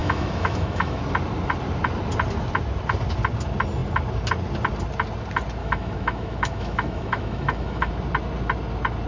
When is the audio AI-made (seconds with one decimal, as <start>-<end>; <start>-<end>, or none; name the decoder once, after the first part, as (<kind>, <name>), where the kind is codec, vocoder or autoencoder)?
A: 0.0-1.0 (autoencoder, DAC-VAE); 5.6-7.9